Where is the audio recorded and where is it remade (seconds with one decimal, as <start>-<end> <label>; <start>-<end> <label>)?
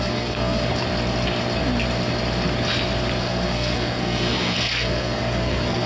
0.0-0.7 remade; 0.7-3.2 recorded; 3.2-5.9 remade